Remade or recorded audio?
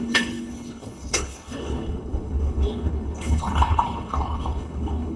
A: remade